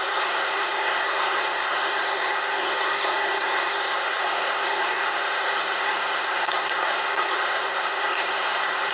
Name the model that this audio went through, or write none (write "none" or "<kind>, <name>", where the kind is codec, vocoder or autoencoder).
codec, SNAC